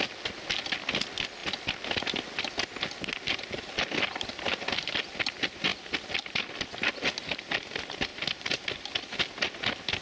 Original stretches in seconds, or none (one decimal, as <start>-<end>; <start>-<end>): 0.0-1.4; 2.4-8.1; 8.7-10.0